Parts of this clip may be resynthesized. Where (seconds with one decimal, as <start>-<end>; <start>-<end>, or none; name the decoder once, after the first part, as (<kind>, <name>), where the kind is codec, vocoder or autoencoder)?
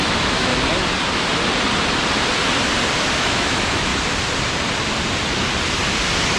0.0-0.5 (autoencoder, DAC-VAE); 3.1-3.9